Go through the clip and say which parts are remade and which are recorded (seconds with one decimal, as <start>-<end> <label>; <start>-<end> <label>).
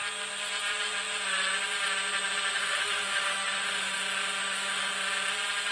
0.0-2.5 recorded; 2.5-4.0 remade; 4.0-4.4 recorded; 4.4-4.9 remade; 4.9-5.7 recorded